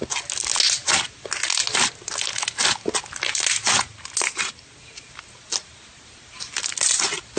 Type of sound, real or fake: real